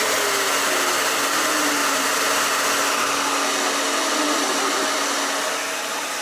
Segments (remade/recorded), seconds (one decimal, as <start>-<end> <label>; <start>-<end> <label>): 0.0-6.2 recorded